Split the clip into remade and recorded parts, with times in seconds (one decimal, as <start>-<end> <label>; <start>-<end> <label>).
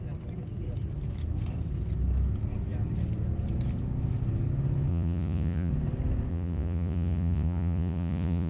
0.0-4.9 recorded; 4.9-5.7 remade; 5.7-6.3 recorded; 6.3-8.5 remade